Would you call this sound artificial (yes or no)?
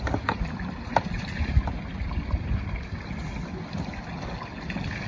no